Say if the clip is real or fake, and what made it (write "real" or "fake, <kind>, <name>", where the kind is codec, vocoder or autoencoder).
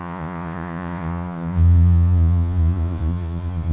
fake, vocoder, Vocos